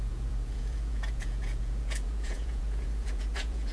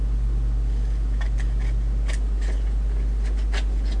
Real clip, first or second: second